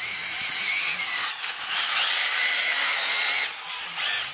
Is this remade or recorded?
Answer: recorded